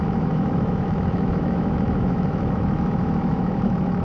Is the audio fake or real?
fake